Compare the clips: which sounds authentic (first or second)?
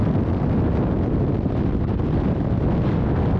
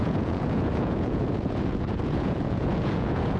first